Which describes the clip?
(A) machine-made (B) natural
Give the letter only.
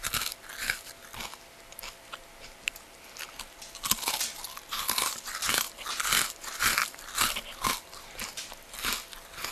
B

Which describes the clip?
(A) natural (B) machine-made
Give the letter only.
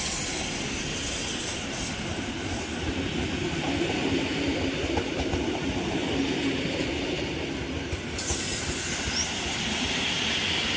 A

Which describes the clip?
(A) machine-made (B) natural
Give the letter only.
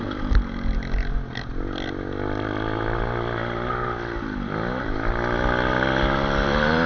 B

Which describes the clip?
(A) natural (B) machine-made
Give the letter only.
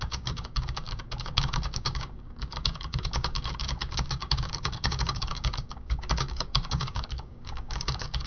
B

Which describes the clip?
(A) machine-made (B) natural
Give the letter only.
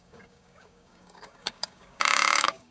A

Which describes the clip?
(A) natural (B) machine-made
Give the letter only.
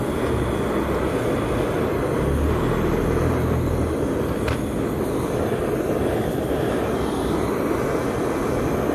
A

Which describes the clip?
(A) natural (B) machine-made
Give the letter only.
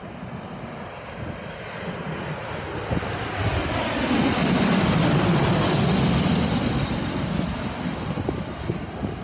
A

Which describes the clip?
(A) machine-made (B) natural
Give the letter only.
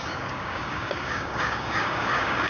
A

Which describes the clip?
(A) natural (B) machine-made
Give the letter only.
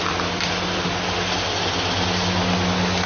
A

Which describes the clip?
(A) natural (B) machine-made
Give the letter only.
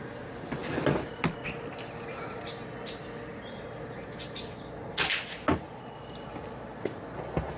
A